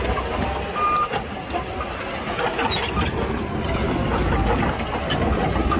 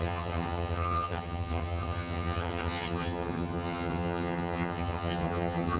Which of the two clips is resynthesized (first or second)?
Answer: second